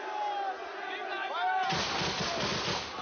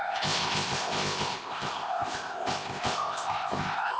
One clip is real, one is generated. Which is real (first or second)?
first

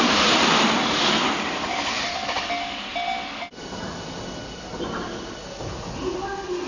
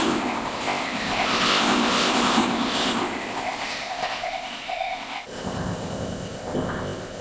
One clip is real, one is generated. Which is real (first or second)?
first